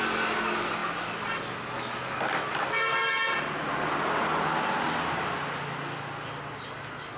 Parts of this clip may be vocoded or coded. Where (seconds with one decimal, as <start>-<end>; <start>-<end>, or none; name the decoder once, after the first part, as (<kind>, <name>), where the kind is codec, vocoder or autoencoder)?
none